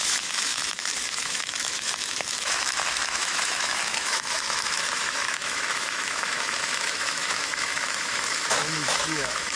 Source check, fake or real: fake